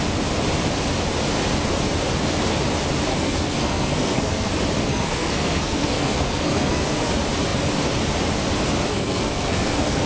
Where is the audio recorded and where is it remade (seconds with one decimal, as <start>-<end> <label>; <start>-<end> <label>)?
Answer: 0.0-3.1 recorded; 3.1-4.5 remade; 4.5-4.9 recorded; 4.9-7.1 remade; 7.1-8.9 recorded; 8.9-10.1 remade